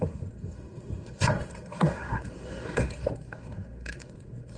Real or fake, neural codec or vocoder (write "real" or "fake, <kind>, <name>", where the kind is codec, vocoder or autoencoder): fake, codec, SNAC